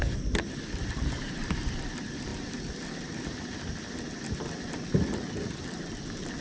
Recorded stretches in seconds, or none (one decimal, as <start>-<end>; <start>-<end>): 0.0-6.4